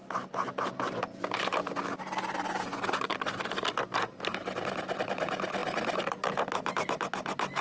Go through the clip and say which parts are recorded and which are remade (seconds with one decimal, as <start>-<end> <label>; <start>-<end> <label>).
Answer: 0.0-7.6 recorded